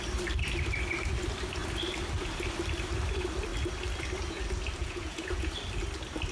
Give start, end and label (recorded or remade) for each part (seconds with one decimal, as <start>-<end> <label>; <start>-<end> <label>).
0.0-4.8 recorded; 4.8-5.5 remade; 5.5-6.3 recorded